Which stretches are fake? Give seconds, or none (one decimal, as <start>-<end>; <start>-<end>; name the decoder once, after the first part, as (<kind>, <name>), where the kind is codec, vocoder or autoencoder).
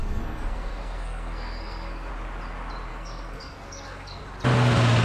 0.0-2.1 (codec, SNAC); 2.9-4.2